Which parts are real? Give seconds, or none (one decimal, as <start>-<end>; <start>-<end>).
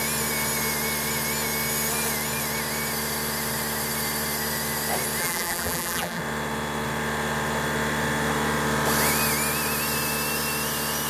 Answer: 0.0-5.2; 6.2-11.1